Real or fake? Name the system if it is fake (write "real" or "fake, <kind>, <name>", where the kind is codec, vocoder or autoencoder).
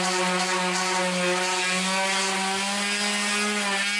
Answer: real